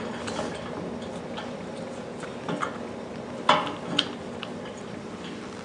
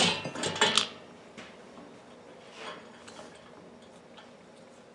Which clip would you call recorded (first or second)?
second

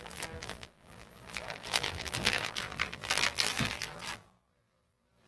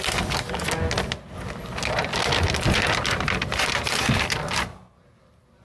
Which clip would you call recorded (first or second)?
second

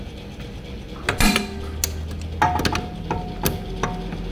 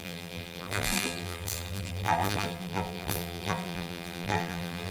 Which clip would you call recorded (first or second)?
first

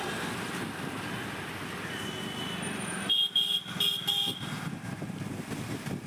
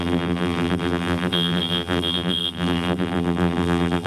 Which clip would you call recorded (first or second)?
first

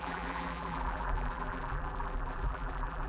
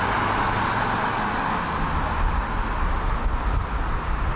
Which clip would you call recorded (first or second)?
second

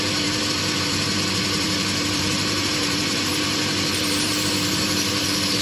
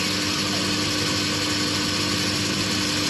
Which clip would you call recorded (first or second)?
second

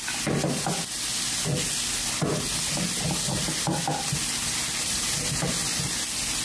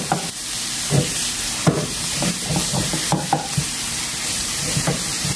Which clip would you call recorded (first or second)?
first